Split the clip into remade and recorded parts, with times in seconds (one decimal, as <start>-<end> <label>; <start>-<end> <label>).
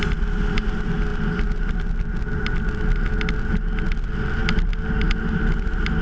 0.0-6.0 recorded